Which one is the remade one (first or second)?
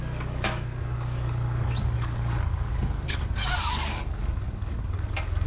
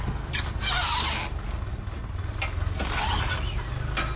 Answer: first